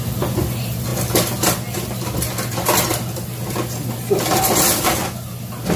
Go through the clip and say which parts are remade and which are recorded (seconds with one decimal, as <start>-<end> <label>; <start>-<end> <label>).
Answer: 0.0-5.8 recorded

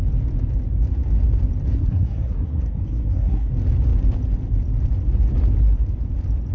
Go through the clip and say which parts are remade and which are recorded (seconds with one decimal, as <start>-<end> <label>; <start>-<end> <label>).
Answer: 0.0-1.7 recorded; 1.7-3.5 remade; 3.5-6.5 recorded

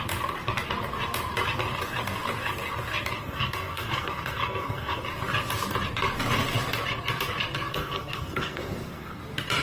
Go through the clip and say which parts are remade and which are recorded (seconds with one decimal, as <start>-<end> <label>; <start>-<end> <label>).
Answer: 0.0-3.2 recorded; 3.2-5.0 remade; 5.0-7.7 recorded; 7.7-9.2 remade; 9.2-9.6 recorded

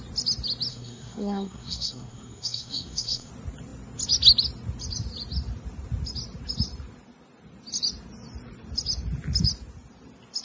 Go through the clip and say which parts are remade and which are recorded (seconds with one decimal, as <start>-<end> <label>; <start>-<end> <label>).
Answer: 0.0-0.7 recorded; 0.7-3.3 remade; 3.3-10.4 recorded